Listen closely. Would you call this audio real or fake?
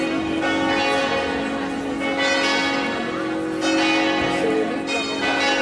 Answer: real